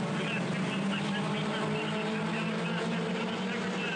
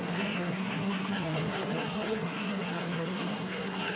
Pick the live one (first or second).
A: first